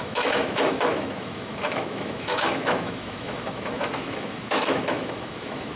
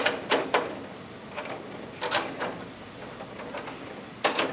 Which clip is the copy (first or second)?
first